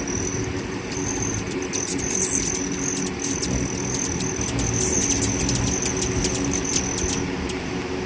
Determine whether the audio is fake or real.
real